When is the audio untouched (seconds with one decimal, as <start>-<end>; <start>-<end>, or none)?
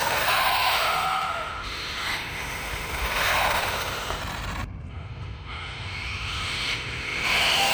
4.2-4.9